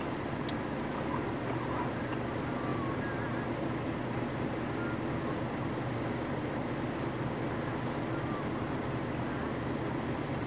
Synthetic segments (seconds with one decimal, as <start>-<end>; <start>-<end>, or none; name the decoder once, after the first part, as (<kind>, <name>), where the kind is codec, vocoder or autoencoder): none